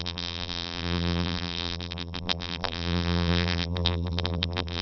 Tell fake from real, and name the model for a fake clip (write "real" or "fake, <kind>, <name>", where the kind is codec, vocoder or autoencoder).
fake, vocoder, BigVGAN v2